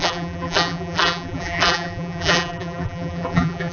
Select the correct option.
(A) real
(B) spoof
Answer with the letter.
B